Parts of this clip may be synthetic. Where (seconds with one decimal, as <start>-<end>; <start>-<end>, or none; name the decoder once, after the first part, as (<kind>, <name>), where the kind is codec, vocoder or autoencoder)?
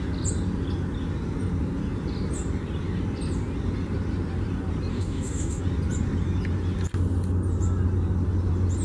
4.9-5.6 (codec, DAC)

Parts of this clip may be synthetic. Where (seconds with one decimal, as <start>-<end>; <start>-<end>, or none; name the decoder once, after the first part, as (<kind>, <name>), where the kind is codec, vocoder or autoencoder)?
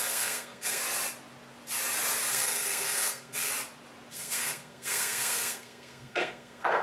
0.0-0.8 (codec, SNAC); 2.3-3.5; 4.1-6.8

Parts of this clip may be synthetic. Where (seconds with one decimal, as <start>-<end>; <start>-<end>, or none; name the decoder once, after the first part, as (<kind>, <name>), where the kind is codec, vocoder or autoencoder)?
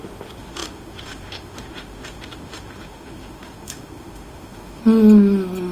0.0-4.8 (autoencoder, DAC-VAE)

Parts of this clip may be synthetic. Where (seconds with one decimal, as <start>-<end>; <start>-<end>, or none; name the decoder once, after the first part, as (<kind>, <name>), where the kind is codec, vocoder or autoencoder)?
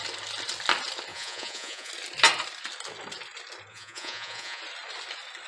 1.1-1.9 (vocoder, Vocos); 3.7-4.6